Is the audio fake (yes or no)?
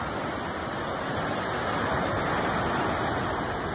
no